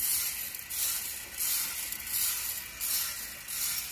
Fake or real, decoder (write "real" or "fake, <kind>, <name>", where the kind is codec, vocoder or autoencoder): real